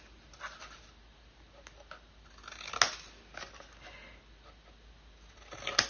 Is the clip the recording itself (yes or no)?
yes